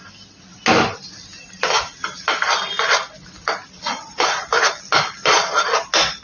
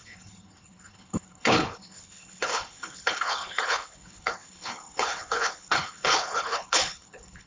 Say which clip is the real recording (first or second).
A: first